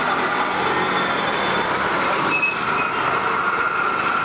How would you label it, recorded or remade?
recorded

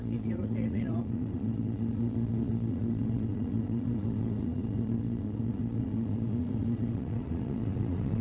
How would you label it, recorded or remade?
remade